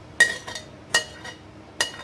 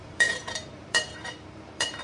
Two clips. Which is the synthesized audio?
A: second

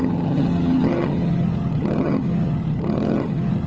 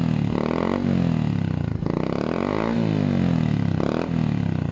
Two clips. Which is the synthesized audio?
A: first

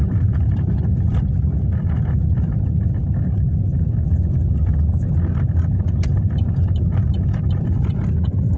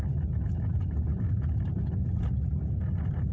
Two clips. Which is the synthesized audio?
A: first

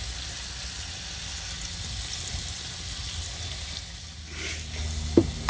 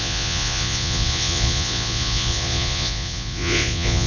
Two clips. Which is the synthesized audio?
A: second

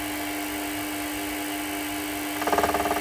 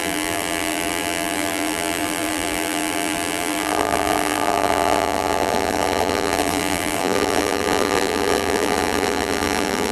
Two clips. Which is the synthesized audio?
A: second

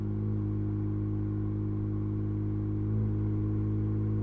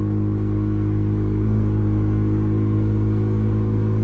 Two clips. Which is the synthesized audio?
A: second